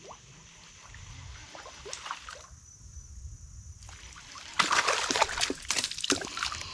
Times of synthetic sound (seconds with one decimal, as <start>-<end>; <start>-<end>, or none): none